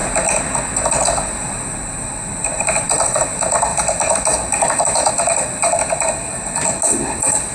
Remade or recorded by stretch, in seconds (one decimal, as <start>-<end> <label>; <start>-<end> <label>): 0.0-1.8 recorded; 1.8-3.7 remade; 3.7-5.1 recorded; 5.1-5.6 remade; 5.6-7.5 recorded